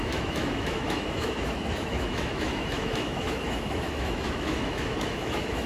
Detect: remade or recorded remade